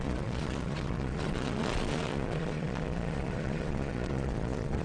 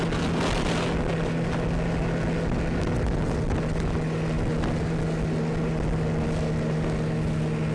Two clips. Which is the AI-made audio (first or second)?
first